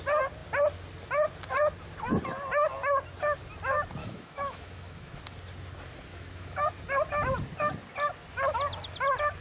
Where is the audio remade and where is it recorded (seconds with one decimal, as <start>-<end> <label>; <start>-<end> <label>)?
0.0-4.0 recorded; 4.0-5.2 remade; 5.2-6.1 recorded; 6.1-6.7 remade; 6.7-9.4 recorded